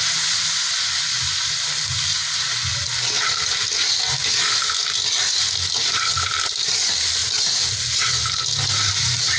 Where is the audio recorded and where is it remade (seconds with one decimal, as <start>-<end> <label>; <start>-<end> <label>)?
0.0-9.4 recorded